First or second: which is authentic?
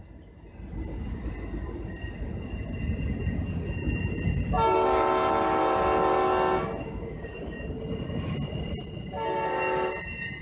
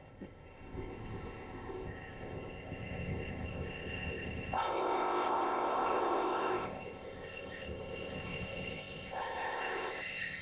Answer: first